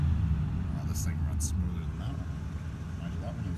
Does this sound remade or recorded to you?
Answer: recorded